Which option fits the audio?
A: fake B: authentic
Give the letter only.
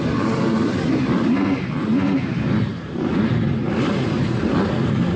A